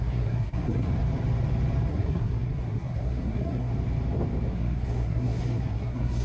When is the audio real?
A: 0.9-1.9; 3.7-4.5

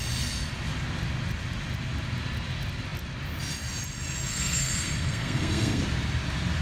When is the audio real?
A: 0.0-4.3; 5.8-6.6

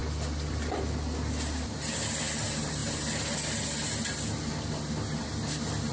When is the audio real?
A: 0.0-5.9

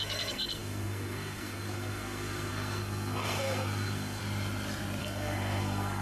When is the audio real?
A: 4.2-5.0

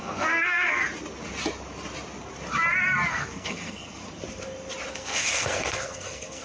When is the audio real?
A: 0.8-3.1; 4.0-4.9